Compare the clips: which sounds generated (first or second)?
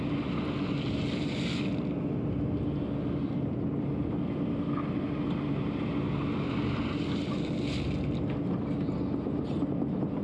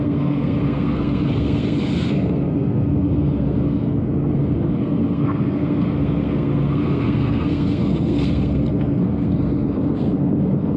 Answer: second